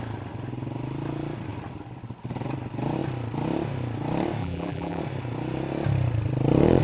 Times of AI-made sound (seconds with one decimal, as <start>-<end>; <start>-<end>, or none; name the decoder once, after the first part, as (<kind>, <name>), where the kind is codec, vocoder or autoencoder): 4.4-5.0 (vocoder, BigVGAN v2)